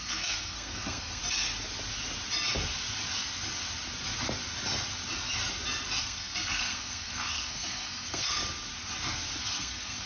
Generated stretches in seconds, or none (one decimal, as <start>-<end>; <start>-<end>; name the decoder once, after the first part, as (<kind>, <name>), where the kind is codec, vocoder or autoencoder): 0.0-1.2 (codec, SNAC); 6.0-8.4; 9.4-10.1